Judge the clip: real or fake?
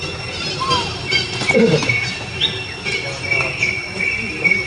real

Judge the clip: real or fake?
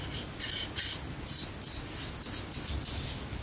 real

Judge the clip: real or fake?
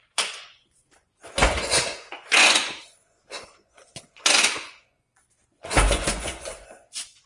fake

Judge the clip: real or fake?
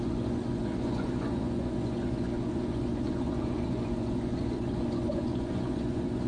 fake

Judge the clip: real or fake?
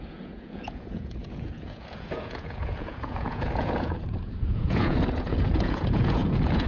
fake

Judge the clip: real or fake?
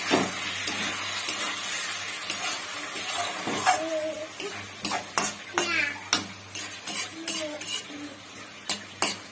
real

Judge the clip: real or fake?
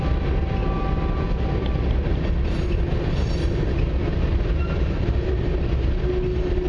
real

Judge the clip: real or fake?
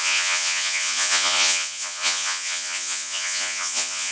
fake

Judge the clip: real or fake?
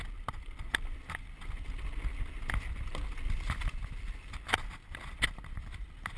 real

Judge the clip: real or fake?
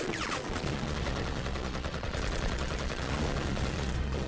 fake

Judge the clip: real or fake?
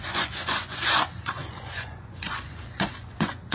fake